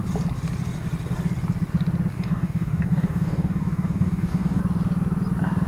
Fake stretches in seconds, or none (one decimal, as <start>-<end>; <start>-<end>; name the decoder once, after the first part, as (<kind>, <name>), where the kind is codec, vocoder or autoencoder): 2.1-4.6 (codec, DAC)